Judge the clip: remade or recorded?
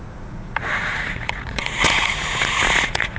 remade